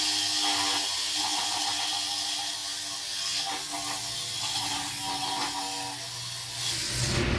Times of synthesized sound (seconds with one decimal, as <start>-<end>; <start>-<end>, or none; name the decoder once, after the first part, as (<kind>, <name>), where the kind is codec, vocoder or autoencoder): none